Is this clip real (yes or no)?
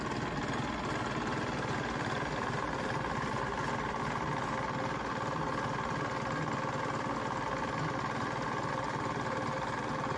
yes